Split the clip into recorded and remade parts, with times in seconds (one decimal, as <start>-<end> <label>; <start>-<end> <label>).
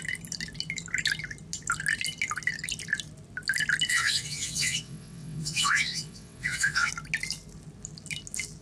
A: 0.0-3.9 recorded; 3.9-6.9 remade; 6.9-8.6 recorded